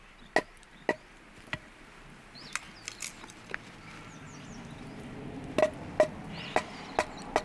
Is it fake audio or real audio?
real